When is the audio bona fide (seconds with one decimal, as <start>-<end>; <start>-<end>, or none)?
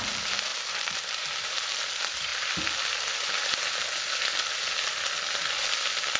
2.3-6.2